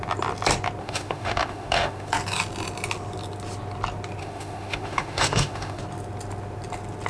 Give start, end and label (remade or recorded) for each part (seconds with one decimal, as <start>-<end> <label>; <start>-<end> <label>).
0.0-0.8 recorded; 0.8-2.1 remade; 2.1-4.2 recorded; 4.2-5.8 remade; 5.8-7.1 recorded